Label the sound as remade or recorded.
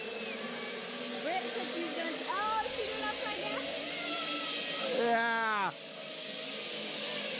recorded